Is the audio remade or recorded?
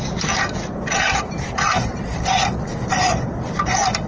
recorded